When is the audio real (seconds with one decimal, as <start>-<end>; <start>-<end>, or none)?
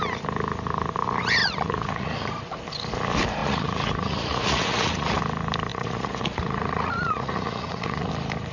0.0-1.4; 2.3-3.4; 5.2-5.7; 8.1-8.5